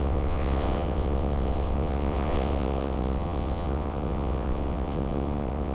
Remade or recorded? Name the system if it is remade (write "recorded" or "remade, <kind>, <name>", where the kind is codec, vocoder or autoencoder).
remade, vocoder, WaveNeXt